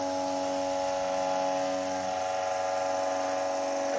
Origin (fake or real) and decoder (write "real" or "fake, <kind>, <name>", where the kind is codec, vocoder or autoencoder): real